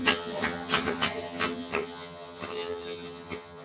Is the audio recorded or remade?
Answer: remade